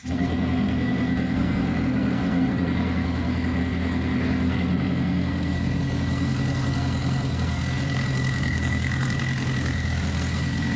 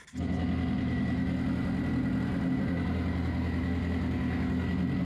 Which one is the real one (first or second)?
second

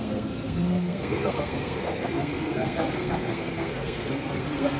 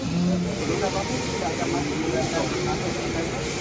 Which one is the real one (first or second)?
second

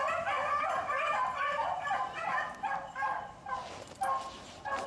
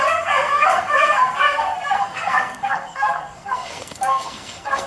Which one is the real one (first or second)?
first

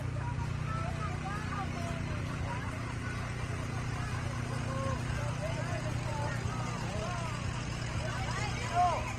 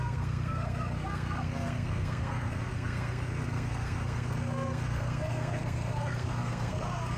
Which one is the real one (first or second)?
first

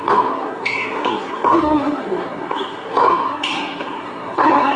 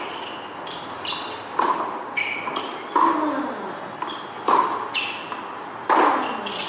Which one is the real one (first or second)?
second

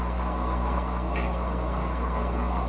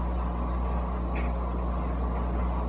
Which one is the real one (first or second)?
second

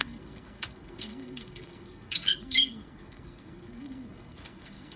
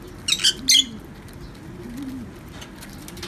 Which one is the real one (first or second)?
second